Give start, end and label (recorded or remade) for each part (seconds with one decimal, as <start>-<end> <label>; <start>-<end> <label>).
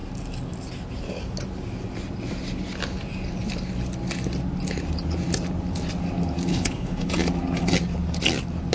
0.0-6.5 recorded; 6.5-7.1 remade; 7.1-8.7 recorded